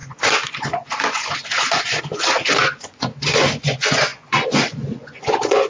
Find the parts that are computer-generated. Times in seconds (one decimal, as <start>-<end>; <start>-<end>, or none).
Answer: 0.0-5.7